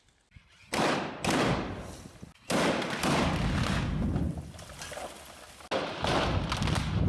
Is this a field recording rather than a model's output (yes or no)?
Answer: yes